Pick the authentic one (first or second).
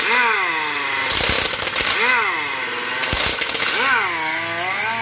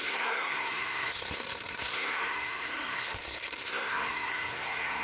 first